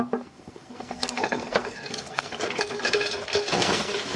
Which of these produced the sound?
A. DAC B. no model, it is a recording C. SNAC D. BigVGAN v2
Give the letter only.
C